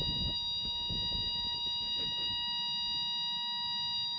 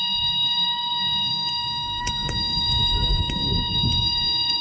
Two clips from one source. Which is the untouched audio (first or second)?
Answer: first